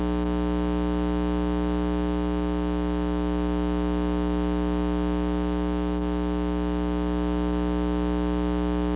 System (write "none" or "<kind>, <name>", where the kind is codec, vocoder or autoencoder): none